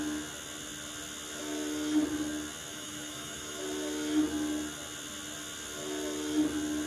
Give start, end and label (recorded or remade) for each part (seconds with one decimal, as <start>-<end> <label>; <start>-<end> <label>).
0.0-2.7 recorded; 2.7-3.6 remade; 3.6-6.9 recorded